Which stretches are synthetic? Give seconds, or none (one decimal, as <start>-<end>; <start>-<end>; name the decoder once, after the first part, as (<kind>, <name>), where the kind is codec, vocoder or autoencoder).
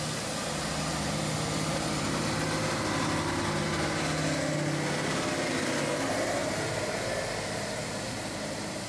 none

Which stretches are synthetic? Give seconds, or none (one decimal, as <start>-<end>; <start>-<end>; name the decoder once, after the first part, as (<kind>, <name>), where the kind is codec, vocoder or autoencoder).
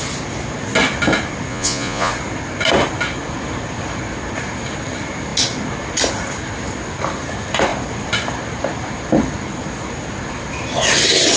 1.5-2.1 (vocoder, Vocos)